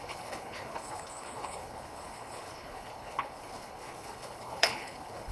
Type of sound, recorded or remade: remade